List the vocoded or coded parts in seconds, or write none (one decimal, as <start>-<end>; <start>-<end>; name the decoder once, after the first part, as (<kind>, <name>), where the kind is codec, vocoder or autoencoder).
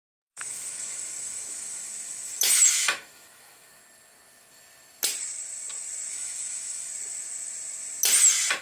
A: 0.0-3.8 (autoencoder, DAC-VAE); 6.1-6.9